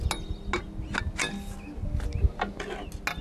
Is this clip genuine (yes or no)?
yes